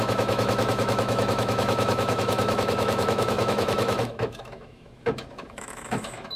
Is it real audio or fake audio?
fake